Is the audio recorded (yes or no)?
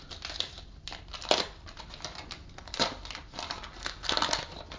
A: yes